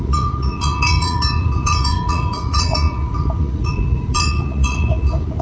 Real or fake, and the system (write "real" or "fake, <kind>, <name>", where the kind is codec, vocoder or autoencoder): fake, vocoder, Vocos